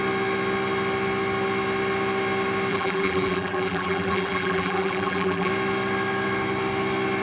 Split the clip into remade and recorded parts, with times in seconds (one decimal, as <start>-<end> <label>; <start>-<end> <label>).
0.0-2.7 recorded; 2.7-5.5 remade; 5.5-7.2 recorded